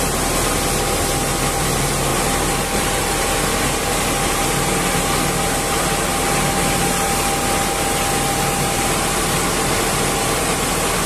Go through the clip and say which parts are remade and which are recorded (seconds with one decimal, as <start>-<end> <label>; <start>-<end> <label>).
0.0-11.1 recorded